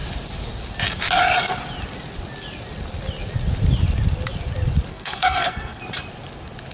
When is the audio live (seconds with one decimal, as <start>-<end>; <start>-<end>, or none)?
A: 0.0-4.9; 5.8-6.7

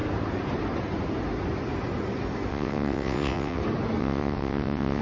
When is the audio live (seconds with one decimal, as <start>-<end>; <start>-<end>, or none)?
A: 0.0-2.5; 3.6-4.0

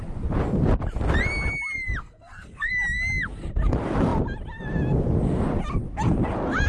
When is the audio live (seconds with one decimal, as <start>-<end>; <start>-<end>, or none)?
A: 0.0-2.0; 2.7-6.7